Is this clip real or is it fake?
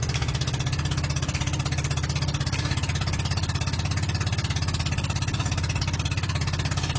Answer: real